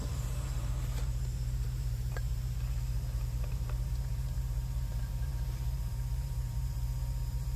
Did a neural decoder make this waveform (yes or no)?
yes